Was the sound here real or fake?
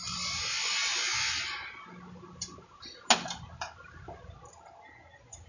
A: real